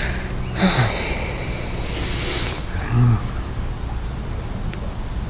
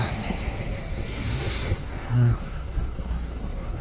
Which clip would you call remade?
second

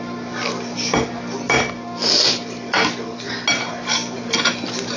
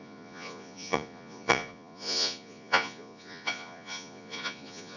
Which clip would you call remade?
second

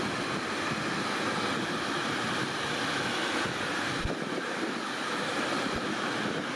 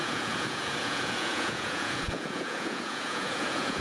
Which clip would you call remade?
second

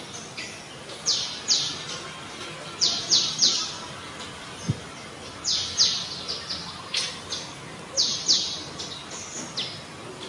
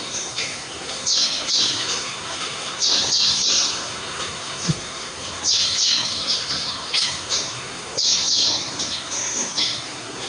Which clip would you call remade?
second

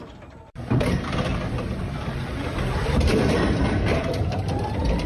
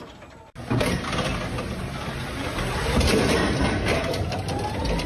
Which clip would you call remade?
first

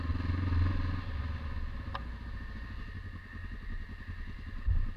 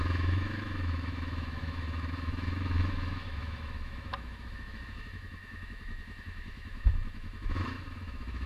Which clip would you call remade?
second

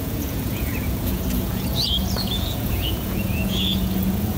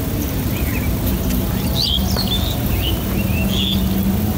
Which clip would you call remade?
first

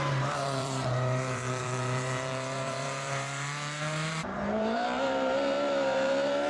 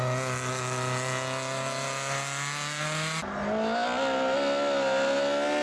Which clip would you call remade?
first